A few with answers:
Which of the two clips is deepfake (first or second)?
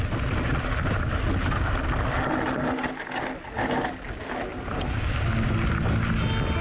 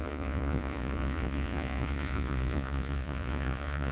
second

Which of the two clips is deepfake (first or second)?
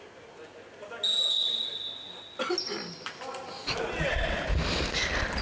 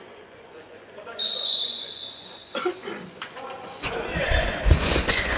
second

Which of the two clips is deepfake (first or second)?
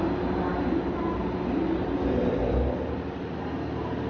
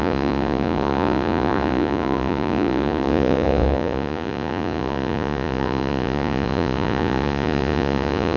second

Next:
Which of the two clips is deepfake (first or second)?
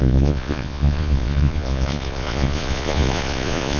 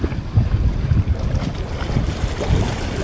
first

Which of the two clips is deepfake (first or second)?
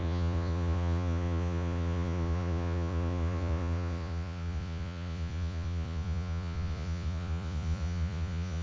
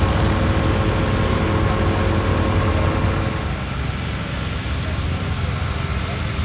first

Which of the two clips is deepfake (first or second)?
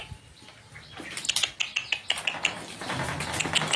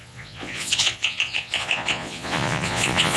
second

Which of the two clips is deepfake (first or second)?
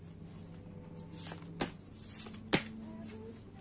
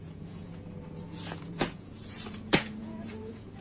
second